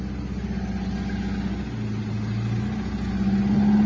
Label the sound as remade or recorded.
recorded